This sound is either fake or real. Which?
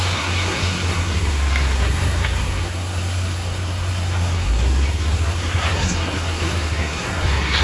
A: fake